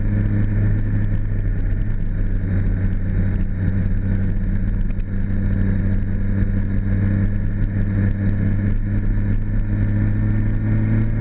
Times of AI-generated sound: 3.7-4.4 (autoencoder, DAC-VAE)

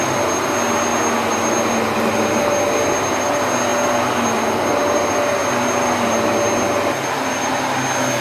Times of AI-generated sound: none

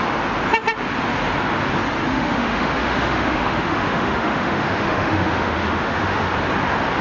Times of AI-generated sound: 2.1-6.3 (autoencoder, DAC-VAE)